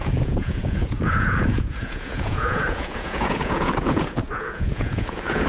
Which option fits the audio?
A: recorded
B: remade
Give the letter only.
B